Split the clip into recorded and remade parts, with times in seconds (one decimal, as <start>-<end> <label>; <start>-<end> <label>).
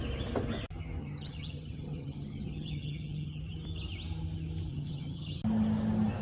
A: 0.0-1.0 recorded; 1.0-3.4 remade; 3.4-4.7 recorded; 4.7-5.4 remade; 5.4-6.2 recorded